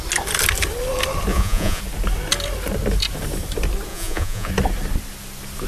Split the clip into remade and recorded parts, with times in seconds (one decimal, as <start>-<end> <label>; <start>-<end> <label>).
0.0-1.3 recorded; 1.3-1.8 remade; 1.8-3.9 recorded; 3.9-4.5 remade; 4.5-5.7 recorded

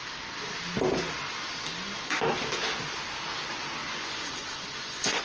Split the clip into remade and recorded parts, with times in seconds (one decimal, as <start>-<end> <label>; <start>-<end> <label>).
0.0-3.8 recorded; 3.8-5.2 remade